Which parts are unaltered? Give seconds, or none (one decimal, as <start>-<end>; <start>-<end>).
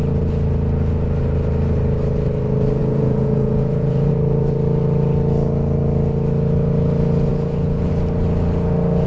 0.0-2.8; 4.1-7.3; 7.9-9.1